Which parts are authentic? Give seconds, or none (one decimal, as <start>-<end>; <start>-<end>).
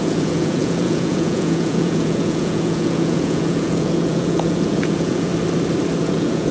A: 5.3-6.0